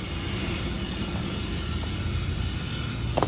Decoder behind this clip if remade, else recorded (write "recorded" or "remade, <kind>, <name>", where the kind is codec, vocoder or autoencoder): recorded